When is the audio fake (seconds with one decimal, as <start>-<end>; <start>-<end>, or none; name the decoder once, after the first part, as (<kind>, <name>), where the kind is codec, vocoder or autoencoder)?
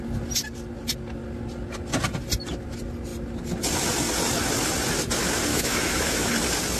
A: 5.5-6.3 (autoencoder, DAC-VAE)